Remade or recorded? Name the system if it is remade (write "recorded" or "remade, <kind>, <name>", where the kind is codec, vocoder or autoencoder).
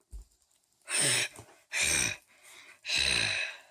recorded